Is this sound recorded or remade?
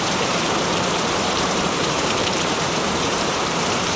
remade